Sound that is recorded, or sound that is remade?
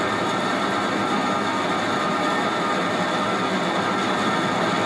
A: recorded